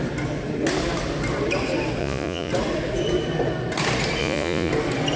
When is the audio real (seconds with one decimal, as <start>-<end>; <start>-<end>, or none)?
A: 0.0-2.0; 2.5-4.2; 4.7-5.2